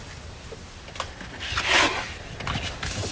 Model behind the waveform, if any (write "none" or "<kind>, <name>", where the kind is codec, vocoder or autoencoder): none